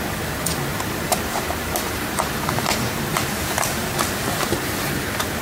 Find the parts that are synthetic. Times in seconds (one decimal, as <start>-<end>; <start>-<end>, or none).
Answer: 0.7-3.9

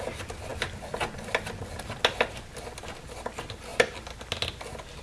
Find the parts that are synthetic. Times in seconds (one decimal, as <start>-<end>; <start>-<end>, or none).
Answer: none

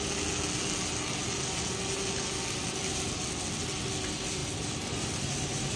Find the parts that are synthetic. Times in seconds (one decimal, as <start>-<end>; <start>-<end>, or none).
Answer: none

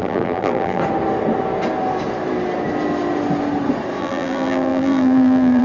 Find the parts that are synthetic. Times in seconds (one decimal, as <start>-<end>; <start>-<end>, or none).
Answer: 0.0-0.8; 4.0-5.6